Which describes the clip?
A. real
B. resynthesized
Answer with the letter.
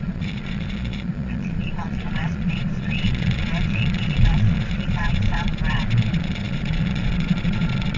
B